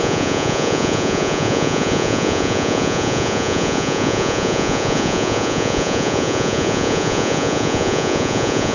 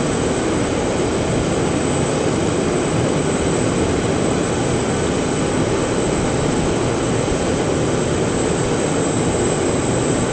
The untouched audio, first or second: second